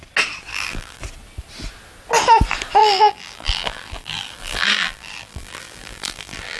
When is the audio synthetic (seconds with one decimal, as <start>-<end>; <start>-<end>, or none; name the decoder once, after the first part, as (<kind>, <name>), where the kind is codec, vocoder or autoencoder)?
0.5-1.0 (vocoder, BigVGAN v2); 2.8-6.6